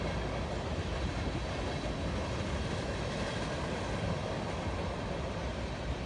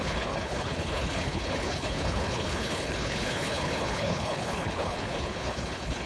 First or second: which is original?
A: first